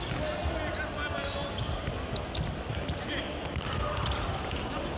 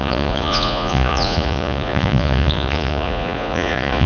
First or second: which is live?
first